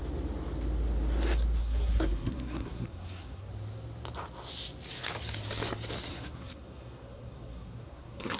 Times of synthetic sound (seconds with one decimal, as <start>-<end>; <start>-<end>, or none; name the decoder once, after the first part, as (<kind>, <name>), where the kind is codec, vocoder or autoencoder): 1.6-3.5 (codec, SNAC); 6.1-8.4